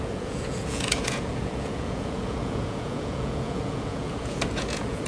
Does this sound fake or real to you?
fake